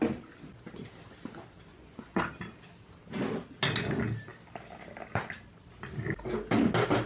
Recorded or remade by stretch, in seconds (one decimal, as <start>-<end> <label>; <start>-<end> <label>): 0.0-1.7 recorded; 1.7-2.2 remade; 2.2-7.1 recorded